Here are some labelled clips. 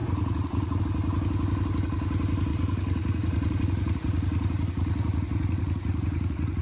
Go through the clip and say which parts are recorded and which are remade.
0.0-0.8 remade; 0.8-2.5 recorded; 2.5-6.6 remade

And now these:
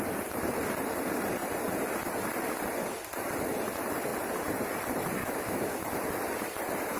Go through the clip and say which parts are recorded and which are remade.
0.0-5.2 recorded; 5.2-5.8 remade; 5.8-7.0 recorded

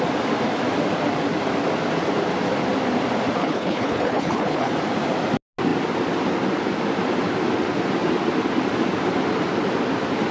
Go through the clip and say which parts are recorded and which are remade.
0.0-3.4 recorded; 3.4-4.7 remade; 4.7-10.3 recorded

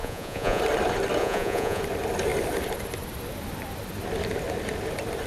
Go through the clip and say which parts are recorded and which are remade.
0.0-0.6 remade; 0.6-1.2 recorded; 1.2-1.8 remade; 1.8-5.3 recorded

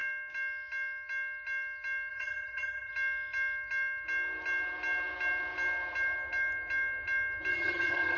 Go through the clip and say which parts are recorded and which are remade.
0.0-2.1 recorded; 2.1-2.9 remade; 2.9-7.5 recorded; 7.5-8.2 remade

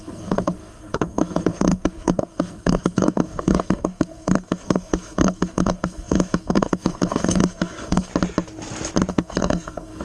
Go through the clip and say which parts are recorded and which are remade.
0.0-8.1 remade; 8.1-9.1 recorded; 9.1-10.0 remade